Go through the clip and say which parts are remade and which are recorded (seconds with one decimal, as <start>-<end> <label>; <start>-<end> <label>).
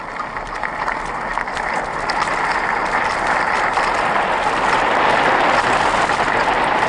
0.0-6.9 recorded